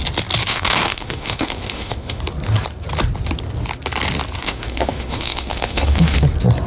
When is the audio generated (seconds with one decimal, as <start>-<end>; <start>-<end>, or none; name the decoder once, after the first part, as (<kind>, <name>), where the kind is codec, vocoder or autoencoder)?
0.5-2.2 (autoencoder, DAC-VAE); 4.4-6.2